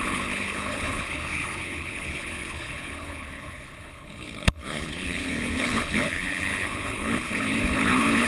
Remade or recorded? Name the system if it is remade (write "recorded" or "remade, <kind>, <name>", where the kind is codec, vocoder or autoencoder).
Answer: remade, codec, HILCodec